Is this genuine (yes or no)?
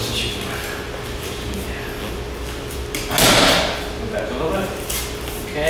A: yes